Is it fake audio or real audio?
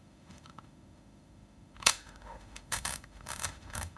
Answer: fake